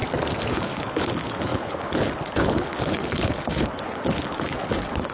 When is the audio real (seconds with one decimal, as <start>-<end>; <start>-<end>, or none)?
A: 0.0-0.5